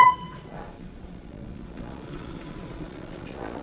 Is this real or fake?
fake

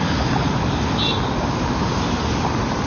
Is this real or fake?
real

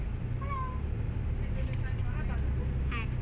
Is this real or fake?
real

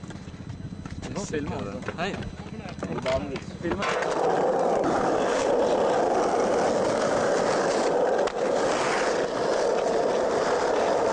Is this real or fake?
real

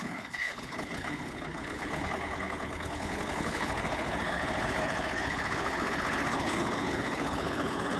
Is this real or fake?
fake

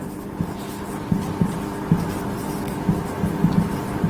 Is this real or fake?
real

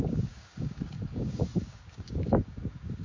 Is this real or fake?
fake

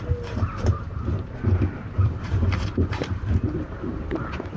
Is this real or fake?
fake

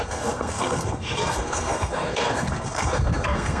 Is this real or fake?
fake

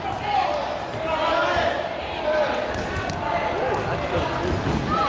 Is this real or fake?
real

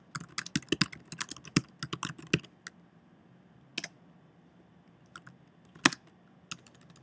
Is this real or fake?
real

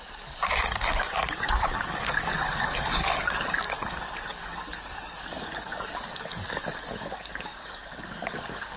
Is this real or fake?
fake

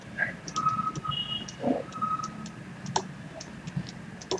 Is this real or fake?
real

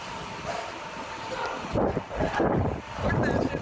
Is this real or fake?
real